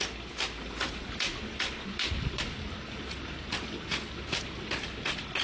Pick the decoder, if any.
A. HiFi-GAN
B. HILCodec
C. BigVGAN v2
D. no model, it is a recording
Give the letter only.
D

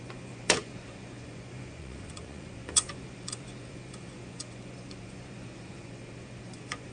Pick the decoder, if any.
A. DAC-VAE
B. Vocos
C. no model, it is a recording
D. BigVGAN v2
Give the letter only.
B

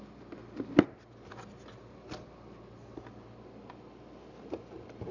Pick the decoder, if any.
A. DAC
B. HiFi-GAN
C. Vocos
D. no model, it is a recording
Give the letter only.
D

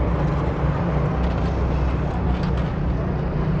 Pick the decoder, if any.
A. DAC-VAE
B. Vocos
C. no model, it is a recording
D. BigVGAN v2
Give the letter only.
C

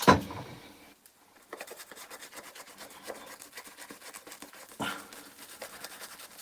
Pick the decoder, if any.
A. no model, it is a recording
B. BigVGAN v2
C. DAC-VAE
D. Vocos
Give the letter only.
A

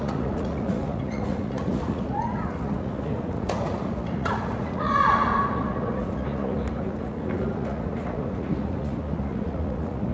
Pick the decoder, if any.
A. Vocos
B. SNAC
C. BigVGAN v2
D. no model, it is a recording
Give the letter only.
A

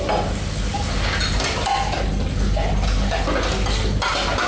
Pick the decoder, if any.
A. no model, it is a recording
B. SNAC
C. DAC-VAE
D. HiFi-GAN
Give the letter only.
A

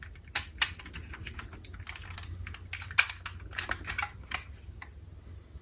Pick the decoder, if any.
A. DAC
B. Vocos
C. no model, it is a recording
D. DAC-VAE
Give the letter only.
C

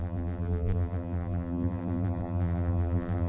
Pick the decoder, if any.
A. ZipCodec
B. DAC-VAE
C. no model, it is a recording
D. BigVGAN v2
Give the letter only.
D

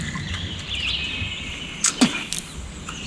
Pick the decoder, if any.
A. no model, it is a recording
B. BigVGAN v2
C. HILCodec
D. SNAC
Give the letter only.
A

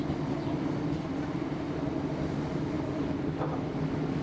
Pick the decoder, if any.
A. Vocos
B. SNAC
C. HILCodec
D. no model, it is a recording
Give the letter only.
D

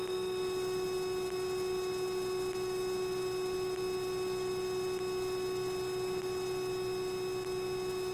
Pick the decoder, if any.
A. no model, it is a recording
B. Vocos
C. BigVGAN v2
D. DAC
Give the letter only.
A